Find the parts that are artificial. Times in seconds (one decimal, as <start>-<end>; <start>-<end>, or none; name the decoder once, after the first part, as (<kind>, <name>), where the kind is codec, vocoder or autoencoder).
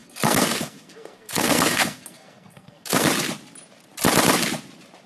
0.0-3.1 (codec, SNAC)